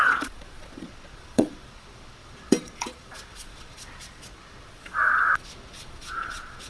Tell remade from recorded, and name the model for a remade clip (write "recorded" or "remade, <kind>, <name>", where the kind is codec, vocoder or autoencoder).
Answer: remade, vocoder, Vocos